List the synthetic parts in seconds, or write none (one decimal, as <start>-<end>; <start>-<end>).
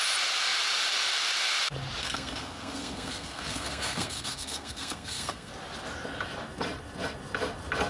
2.0-5.5